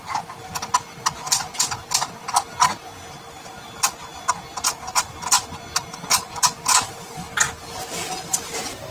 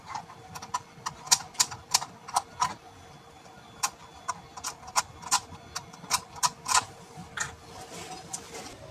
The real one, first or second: first